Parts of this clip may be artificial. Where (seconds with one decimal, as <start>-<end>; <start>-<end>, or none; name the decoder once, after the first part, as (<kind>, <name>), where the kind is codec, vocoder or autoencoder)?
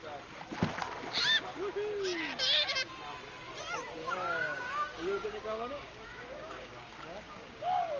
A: 4.0-8.0 (codec, DAC)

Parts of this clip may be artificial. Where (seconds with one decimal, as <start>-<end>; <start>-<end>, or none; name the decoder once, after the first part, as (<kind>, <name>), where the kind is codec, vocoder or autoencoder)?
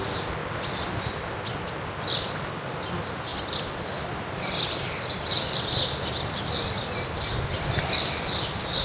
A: none